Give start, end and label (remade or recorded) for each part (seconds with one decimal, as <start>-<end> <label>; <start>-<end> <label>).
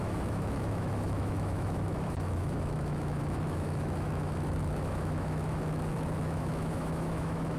0.0-7.6 remade